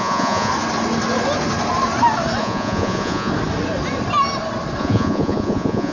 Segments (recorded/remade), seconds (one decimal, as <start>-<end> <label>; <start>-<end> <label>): 0.0-0.5 remade; 0.5-2.4 recorded; 2.4-3.3 remade; 3.3-4.8 recorded; 4.8-5.9 remade